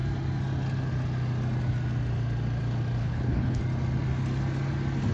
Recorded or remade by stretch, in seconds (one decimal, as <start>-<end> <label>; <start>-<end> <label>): 0.0-3.0 recorded; 3.0-3.6 remade; 3.6-5.1 recorded